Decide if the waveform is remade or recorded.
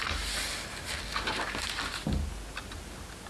recorded